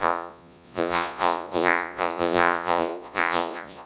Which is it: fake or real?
fake